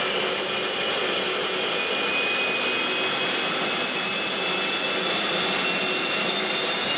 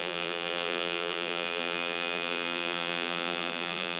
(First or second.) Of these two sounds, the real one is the first